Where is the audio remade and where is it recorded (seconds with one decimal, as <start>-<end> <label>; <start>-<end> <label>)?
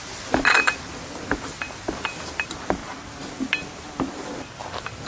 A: 0.0-5.1 recorded